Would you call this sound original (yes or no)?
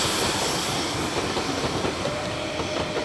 yes